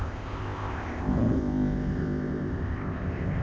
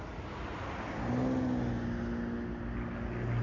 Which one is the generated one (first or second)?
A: first